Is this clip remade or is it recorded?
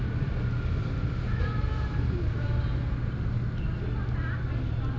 recorded